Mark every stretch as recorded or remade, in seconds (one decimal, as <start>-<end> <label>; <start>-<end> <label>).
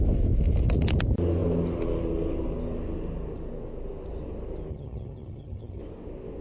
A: 0.0-4.7 recorded; 4.7-5.8 remade; 5.8-6.4 recorded